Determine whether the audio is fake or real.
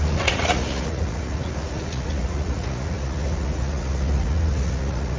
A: fake